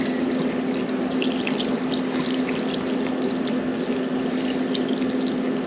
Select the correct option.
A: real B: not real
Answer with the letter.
A